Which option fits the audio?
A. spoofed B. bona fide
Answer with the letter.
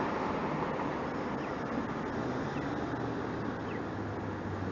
B